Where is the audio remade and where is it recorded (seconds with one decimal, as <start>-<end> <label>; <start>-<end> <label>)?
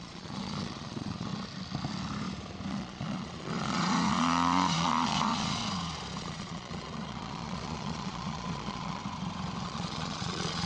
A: 0.0-1.3 remade; 1.3-2.7 recorded; 2.7-5.6 remade; 5.6-6.2 recorded; 6.2-9.0 remade; 9.0-9.6 recorded; 9.6-10.7 remade